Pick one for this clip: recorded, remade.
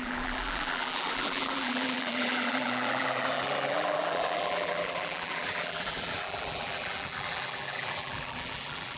remade